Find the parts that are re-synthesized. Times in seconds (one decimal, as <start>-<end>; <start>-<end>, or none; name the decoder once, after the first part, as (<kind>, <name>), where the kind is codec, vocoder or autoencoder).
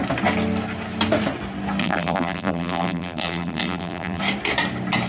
1.8-4.2 (vocoder, BigVGAN v2)